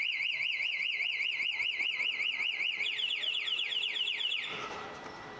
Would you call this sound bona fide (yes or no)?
yes